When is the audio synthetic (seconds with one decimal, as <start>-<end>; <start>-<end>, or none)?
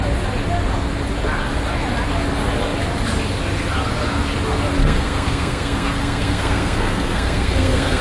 4.8-8.0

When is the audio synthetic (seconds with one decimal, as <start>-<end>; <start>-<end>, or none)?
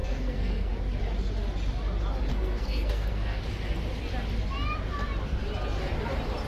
0.0-0.7; 2.3-3.4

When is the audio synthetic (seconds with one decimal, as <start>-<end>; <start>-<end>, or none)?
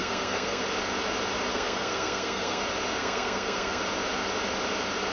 0.0-0.6; 1.5-2.6; 3.0-3.8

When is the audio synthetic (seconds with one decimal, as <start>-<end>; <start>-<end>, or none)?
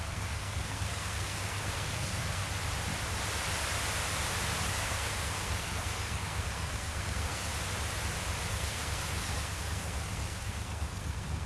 0.0-2.4; 4.7-7.5; 8.5-11.5